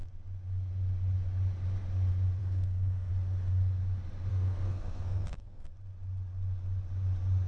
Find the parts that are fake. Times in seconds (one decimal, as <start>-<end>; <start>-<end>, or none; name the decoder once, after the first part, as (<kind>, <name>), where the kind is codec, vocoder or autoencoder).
2.4-3.1 (codec, SNAC); 4.3-5.7